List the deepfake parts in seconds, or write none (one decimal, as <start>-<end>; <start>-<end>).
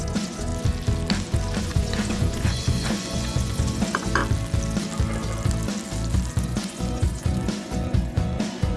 0.0-0.5; 1.6-4.2; 6.4-8.8